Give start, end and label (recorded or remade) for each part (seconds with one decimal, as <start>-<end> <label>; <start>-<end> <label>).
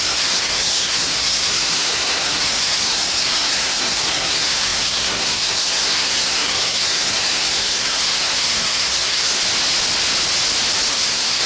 0.0-9.4 remade; 9.4-10.9 recorded; 10.9-11.5 remade